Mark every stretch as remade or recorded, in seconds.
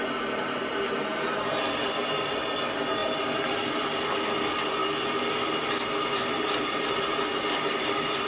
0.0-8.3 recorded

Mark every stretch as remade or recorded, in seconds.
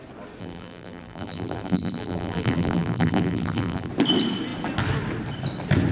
0.0-0.4 recorded; 0.4-3.9 remade; 3.9-5.9 recorded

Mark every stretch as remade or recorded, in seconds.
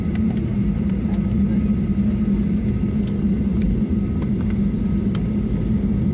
0.0-0.5 recorded; 0.5-1.2 remade; 1.2-6.1 recorded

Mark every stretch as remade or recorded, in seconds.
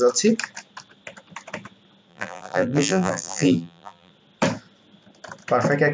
0.0-2.1 recorded; 2.1-4.1 remade; 4.1-5.9 recorded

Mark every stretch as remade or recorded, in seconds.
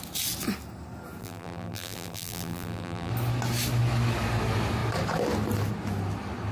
0.0-1.2 recorded; 1.2-3.1 remade; 3.1-6.5 recorded